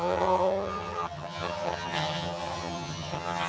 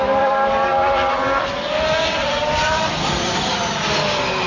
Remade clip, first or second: first